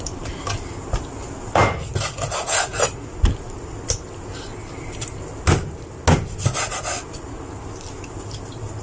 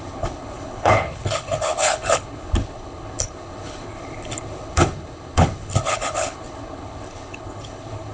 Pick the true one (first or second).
first